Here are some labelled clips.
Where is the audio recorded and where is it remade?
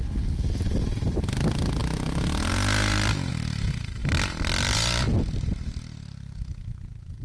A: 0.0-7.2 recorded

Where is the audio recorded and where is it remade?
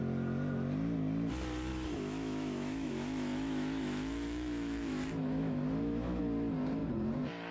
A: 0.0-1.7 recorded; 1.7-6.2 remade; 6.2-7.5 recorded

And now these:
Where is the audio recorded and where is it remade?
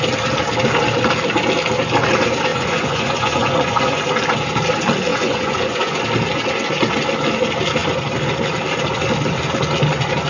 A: 0.0-2.5 recorded; 2.5-4.0 remade; 4.0-5.1 recorded; 5.1-6.0 remade; 6.0-10.3 recorded